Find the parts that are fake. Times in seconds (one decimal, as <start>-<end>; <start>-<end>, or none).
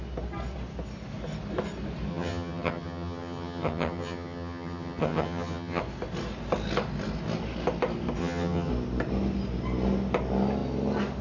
2.1-5.8; 8.2-8.7